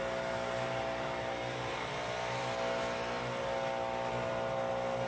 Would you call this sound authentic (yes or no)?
yes